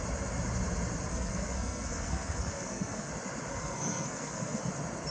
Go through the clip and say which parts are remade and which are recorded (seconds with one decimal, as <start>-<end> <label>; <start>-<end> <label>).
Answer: 0.0-1.1 recorded; 1.1-3.1 remade; 3.1-3.5 recorded; 3.5-4.6 remade; 4.6-5.1 recorded